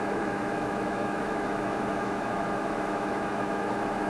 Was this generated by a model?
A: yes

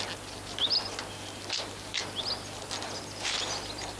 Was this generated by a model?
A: no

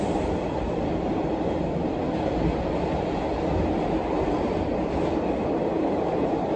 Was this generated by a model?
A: no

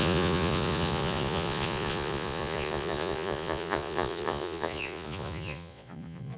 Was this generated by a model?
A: yes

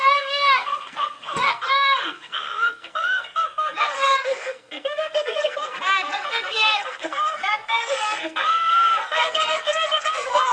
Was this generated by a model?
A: yes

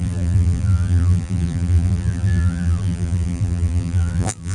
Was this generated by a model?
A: yes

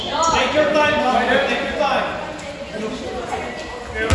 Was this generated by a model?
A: no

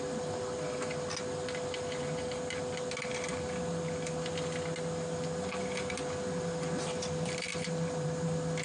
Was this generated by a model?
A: no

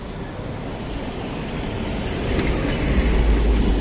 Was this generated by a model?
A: no